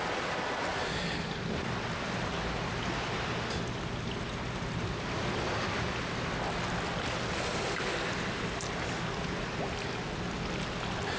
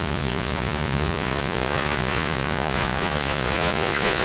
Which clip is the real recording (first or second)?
first